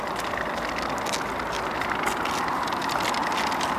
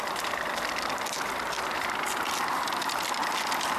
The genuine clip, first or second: first